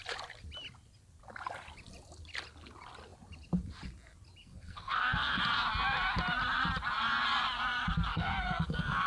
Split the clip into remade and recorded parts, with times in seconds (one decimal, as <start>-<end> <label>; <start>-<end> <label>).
0.0-4.4 recorded; 4.4-5.4 remade; 5.4-8.1 recorded; 8.1-9.1 remade